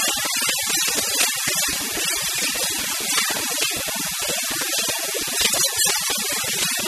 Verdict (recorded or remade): recorded